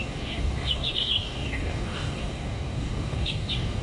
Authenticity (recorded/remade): remade